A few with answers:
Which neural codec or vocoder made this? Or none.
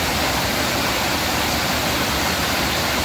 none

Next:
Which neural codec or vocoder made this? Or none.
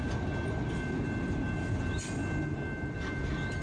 none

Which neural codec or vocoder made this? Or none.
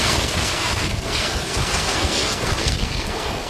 codec, SNAC